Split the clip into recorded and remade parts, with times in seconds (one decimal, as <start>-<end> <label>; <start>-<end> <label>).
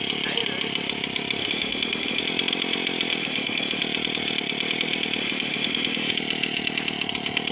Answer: 0.0-1.4 recorded; 1.4-2.2 remade; 2.2-3.2 recorded; 3.2-3.8 remade; 3.8-5.2 recorded; 5.2-6.1 remade; 6.1-7.5 recorded